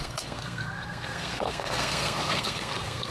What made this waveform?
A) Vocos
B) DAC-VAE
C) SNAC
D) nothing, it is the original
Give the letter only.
C